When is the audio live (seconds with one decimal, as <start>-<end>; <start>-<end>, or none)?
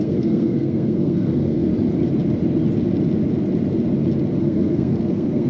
1.7-4.4